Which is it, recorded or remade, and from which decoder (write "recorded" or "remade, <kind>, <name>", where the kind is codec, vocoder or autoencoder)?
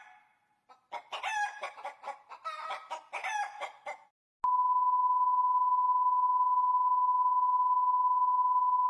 recorded